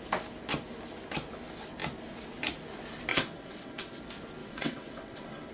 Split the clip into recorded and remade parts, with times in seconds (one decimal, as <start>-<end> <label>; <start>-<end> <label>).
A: 0.0-3.1 recorded; 3.1-4.0 remade; 4.0-4.4 recorded; 4.4-5.5 remade